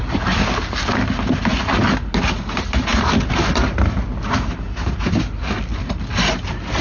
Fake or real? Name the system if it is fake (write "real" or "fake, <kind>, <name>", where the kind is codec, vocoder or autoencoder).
real